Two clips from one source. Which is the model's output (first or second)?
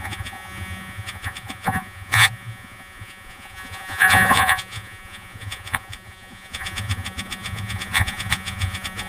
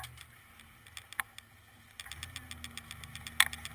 first